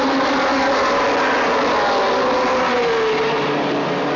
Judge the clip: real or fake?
real